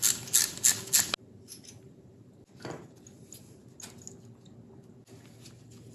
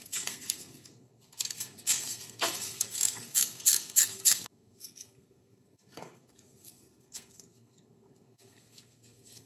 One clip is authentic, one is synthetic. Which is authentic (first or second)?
first